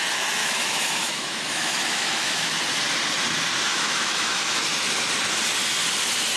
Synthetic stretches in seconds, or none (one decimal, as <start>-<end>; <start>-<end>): 0.4-2.6; 3.7-4.6